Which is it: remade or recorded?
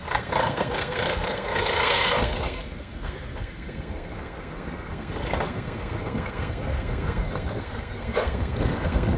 remade